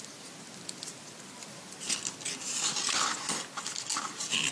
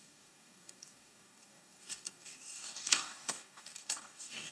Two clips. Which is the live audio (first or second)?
first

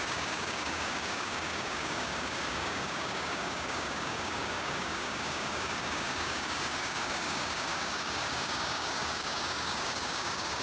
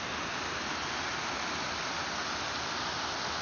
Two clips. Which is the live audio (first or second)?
second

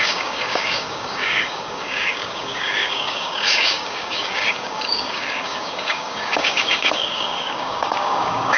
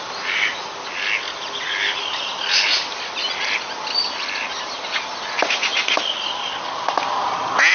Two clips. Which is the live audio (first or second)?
second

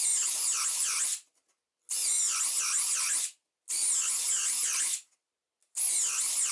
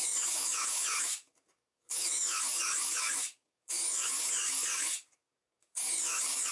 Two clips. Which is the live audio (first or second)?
first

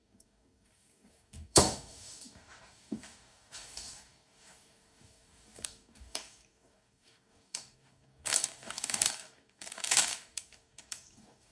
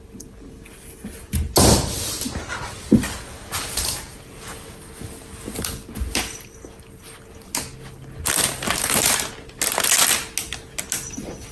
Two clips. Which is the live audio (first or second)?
second